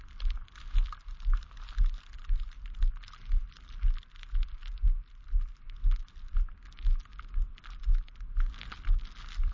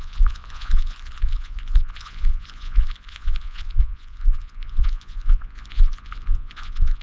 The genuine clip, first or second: first